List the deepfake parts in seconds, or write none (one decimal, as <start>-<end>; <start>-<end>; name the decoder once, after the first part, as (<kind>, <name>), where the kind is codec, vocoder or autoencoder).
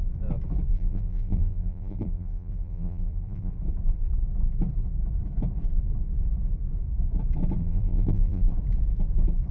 0.7-3.5 (vocoder, BigVGAN v2); 7.6-8.5